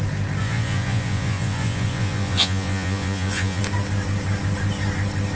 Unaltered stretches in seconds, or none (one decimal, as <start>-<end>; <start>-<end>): 0.0-0.4; 3.6-5.3